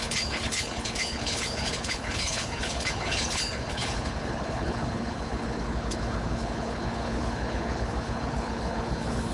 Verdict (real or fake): fake